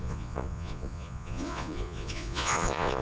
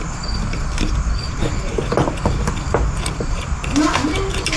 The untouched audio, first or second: second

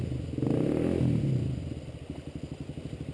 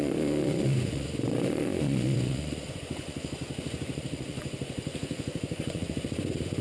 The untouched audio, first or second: first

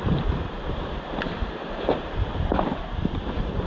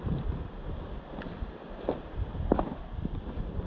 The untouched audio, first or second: second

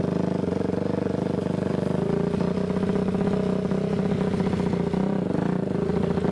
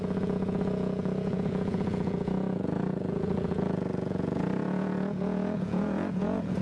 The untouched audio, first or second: first